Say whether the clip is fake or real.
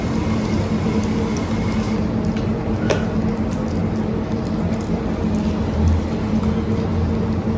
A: real